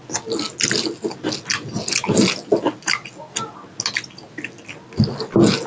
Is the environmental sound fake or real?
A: real